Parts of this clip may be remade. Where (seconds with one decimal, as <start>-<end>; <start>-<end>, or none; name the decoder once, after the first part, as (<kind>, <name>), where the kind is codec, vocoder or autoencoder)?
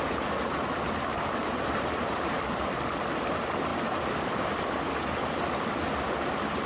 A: 1.1-2.4 (vocoder, BigVGAN v2)